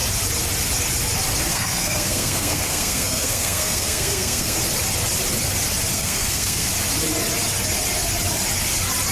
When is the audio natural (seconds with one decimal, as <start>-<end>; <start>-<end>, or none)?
0.0-1.5; 4.6-5.9; 6.7-9.1